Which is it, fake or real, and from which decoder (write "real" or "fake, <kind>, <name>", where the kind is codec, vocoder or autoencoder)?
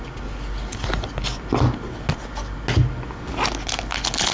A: real